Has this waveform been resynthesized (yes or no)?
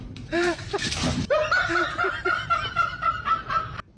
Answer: yes